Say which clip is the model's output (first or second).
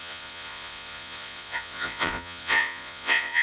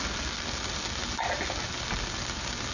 first